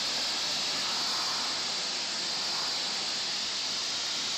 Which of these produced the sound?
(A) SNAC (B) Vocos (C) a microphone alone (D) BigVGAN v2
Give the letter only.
C